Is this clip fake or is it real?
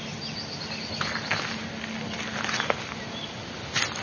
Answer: real